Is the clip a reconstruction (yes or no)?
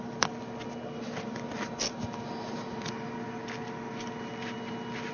no